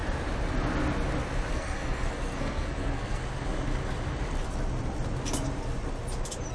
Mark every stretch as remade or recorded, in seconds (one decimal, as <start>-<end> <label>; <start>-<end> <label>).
0.0-1.5 recorded; 1.5-3.2 remade; 3.2-6.5 recorded